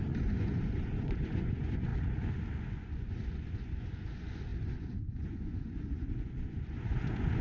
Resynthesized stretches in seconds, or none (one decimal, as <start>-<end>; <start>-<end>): 0.0-1.9; 2.6-7.4